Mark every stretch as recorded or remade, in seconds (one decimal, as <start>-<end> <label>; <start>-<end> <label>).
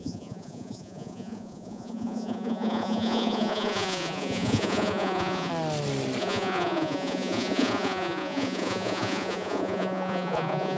0.0-5.5 remade; 5.5-6.2 recorded; 6.2-10.8 remade